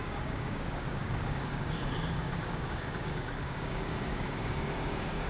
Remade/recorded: remade